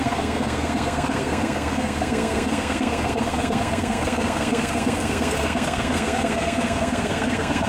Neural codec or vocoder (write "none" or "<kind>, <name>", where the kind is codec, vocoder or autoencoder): codec, SNAC